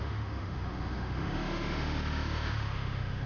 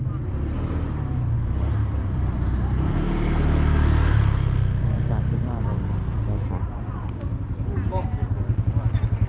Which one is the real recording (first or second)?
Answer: second